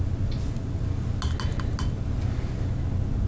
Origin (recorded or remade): recorded